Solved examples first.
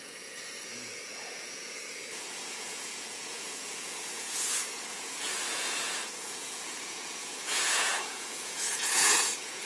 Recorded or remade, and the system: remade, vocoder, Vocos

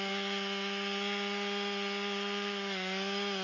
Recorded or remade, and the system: recorded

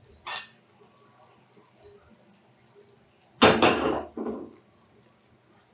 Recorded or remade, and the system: recorded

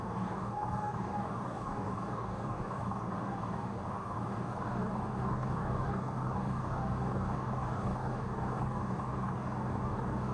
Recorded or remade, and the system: remade, codec, DAC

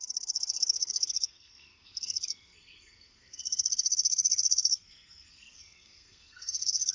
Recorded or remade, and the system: remade, codec, SNAC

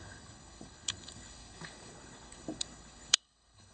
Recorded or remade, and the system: remade, codec, HILCodec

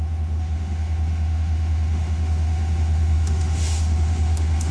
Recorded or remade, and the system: remade, autoencoder, DAC-VAE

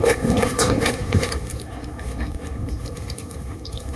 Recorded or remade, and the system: remade, codec, SNAC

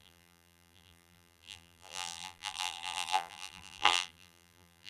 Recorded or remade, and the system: remade, vocoder, BigVGAN v2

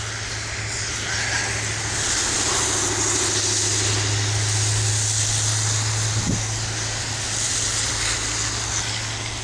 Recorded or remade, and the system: recorded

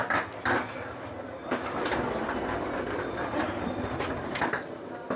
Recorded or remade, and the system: recorded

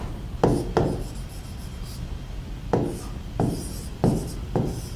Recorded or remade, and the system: recorded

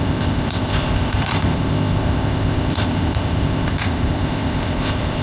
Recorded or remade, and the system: remade, codec, ZipCodec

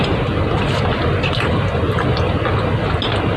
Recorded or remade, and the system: recorded